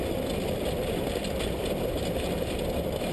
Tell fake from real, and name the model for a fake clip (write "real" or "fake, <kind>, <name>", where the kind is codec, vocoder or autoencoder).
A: real